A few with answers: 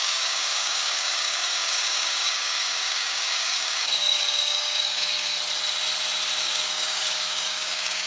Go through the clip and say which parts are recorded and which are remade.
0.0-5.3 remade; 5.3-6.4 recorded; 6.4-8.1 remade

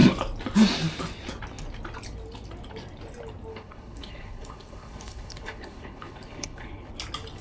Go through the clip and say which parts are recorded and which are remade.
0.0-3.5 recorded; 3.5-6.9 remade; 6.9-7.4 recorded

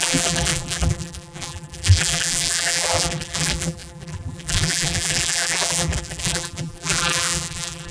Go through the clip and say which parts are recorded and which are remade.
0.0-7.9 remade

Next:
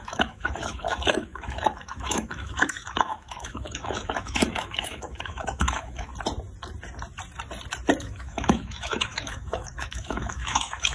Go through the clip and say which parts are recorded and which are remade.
0.0-6.1 remade; 6.1-8.0 recorded; 8.0-10.9 remade